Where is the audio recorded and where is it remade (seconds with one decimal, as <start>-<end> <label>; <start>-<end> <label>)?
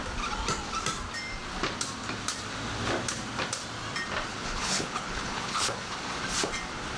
0.0-4.3 recorded; 4.3-5.9 remade; 5.9-7.0 recorded